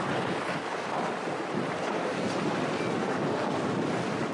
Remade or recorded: recorded